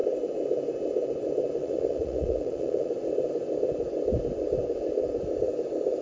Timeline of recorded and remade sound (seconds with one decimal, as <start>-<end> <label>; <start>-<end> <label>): 0.0-1.6 recorded; 1.6-2.9 remade; 2.9-6.0 recorded